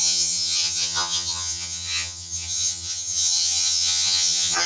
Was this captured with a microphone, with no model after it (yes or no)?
no